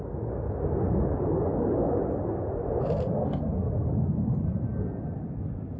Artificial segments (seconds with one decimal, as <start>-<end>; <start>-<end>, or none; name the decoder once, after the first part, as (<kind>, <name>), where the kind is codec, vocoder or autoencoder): none